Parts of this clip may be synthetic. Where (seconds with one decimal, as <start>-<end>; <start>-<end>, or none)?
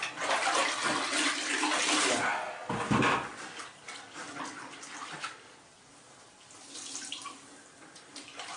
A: none